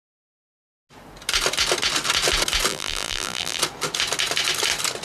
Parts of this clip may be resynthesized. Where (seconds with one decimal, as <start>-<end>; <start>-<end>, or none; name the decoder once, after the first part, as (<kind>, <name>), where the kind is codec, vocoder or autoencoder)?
2.7-3.6 (vocoder, BigVGAN v2)